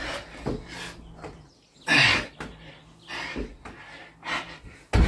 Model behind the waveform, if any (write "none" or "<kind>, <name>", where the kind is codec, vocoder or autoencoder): none